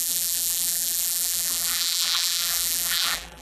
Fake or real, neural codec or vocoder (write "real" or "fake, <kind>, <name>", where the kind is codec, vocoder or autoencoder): fake, vocoder, BigVGAN v2